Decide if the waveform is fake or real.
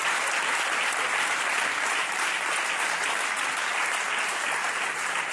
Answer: real